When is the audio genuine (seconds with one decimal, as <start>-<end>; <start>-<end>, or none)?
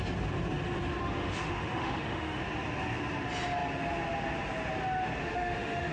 0.0-1.0; 2.4-5.2